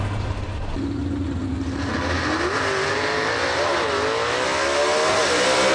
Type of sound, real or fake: real